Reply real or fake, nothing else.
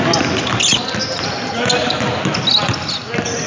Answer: real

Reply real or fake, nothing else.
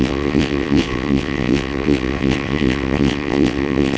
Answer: fake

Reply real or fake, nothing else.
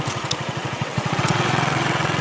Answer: fake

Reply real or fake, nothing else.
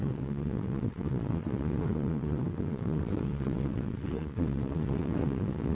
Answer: fake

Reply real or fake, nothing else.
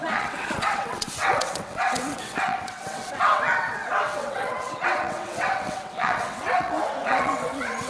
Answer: fake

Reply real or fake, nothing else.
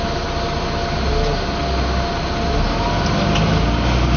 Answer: real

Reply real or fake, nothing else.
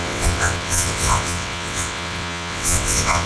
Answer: fake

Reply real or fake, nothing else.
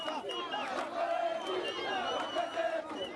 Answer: real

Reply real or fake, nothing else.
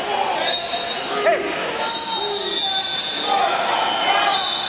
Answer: real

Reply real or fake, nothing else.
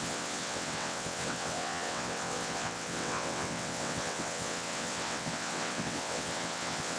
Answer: fake